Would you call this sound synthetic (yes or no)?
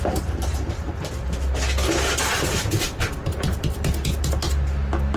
no